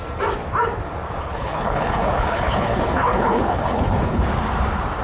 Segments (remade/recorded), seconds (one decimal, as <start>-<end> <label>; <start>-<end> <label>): 0.0-1.2 recorded; 1.2-4.2 remade; 4.2-5.0 recorded